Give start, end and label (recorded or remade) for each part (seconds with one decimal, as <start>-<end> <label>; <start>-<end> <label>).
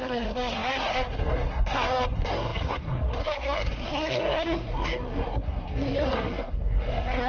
0.0-7.3 remade